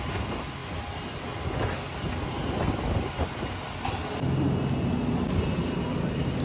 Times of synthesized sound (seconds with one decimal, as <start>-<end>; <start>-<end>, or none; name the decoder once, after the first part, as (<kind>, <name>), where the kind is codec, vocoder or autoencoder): none